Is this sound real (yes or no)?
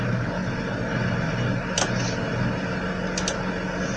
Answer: yes